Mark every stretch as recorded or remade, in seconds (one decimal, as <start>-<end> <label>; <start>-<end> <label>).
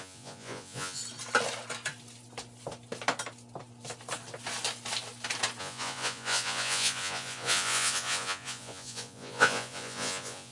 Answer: 0.0-1.0 remade; 1.0-5.6 recorded; 5.6-10.5 remade